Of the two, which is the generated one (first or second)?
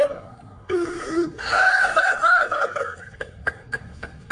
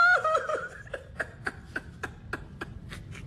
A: first